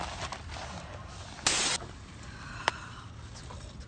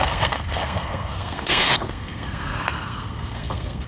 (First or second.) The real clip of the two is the first